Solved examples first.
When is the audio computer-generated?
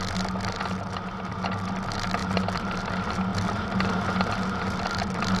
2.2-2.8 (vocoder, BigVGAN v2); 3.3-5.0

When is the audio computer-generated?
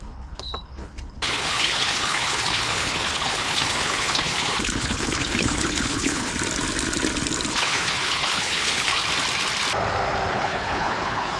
0.0-6.3 (codec, HILCodec); 7.5-9.0; 10.3-11.4